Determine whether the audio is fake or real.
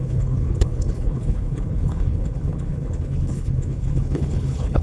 fake